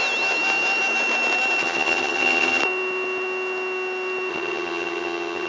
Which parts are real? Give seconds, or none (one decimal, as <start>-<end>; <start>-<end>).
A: 0.0-1.6; 2.6-4.3